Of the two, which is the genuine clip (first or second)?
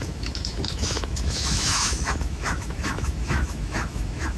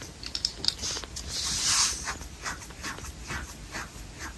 second